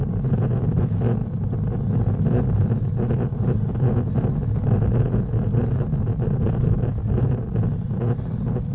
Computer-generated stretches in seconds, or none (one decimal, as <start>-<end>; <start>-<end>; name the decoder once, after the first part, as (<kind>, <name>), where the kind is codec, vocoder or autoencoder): none